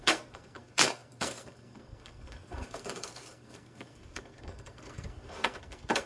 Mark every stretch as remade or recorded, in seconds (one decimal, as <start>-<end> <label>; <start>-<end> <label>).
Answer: 0.0-6.1 remade